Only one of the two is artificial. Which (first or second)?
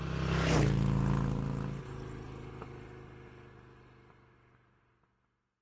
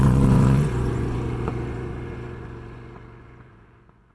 second